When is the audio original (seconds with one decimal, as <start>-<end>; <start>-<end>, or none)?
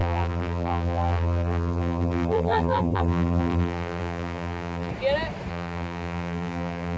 4.9-5.5